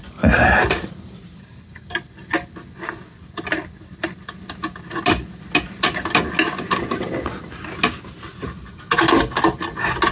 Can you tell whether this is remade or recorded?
recorded